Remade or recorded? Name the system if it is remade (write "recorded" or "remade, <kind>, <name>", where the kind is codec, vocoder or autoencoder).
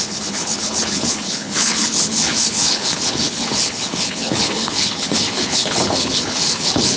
remade, codec, HILCodec